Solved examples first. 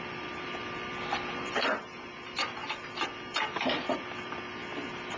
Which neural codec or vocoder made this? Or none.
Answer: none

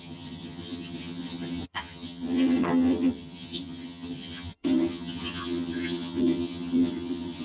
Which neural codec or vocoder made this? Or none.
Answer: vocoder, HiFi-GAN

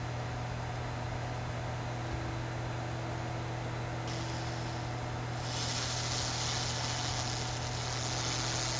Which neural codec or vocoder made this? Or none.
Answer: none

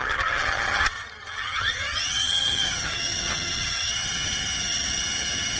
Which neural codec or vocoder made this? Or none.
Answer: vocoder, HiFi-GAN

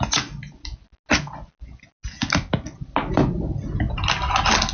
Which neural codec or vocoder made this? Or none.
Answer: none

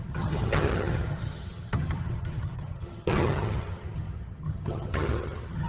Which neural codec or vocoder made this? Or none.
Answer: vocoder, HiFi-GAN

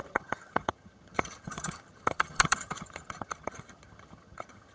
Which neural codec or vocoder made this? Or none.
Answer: vocoder, HiFi-GAN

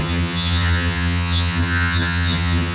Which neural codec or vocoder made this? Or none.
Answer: vocoder, HiFi-GAN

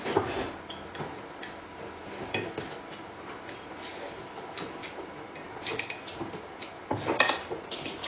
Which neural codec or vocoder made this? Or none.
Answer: none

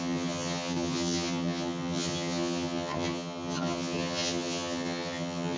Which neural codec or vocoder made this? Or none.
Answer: vocoder, HiFi-GAN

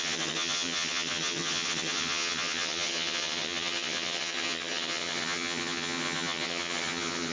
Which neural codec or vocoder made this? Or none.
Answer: vocoder, HiFi-GAN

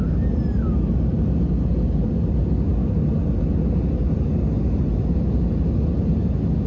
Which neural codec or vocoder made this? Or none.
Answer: none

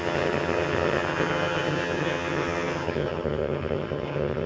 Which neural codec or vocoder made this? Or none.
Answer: vocoder, HiFi-GAN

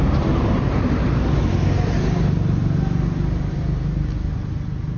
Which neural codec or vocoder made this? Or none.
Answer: none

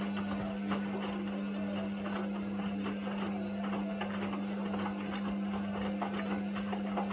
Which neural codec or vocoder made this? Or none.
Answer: none